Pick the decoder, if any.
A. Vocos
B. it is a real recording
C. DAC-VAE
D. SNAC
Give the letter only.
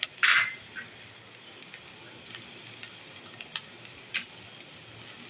B